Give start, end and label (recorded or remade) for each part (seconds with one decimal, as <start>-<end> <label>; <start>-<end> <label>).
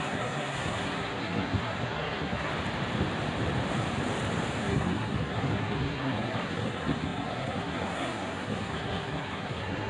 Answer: 0.0-2.5 remade; 2.5-4.6 recorded; 4.6-9.9 remade